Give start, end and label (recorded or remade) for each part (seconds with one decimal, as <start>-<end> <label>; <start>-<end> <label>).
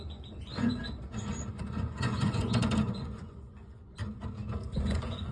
0.0-0.8 remade; 0.8-1.5 recorded; 1.5-4.0 remade; 4.0-4.8 recorded; 4.8-5.3 remade